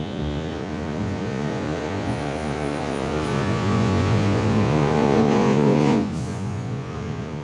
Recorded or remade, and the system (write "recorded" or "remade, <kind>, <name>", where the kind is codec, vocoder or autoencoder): remade, vocoder, Vocos